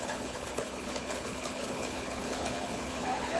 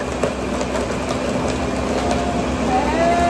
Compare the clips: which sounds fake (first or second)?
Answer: first